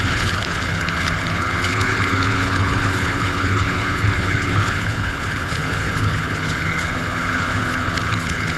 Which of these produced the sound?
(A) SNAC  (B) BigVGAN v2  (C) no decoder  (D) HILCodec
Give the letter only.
D